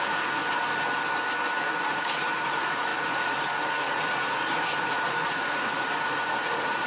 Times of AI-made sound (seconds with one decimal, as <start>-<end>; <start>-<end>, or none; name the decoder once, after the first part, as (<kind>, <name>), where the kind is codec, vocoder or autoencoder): 0.0-0.4 (vocoder, Vocos); 1.7-6.9